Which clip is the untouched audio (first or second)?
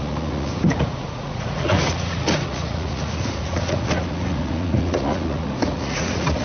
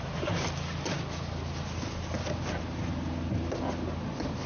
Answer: second